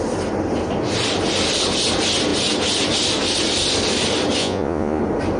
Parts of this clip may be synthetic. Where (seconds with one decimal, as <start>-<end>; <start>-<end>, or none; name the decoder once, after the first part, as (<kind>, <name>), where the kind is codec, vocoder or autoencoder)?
4.4-5.0 (vocoder, Vocos)